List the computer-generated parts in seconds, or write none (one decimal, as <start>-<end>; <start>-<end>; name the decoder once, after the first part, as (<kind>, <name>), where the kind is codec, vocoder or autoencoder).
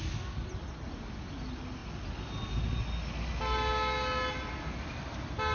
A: none